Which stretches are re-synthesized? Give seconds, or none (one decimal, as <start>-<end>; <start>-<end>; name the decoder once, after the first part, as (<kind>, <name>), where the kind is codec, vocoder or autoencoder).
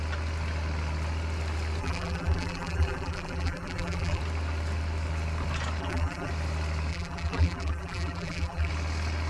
1.8-4.2 (vocoder, BigVGAN v2); 5.8-6.3; 6.9-8.7